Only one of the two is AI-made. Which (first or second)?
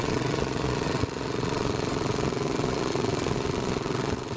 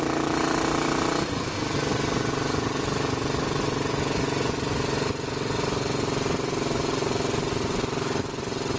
first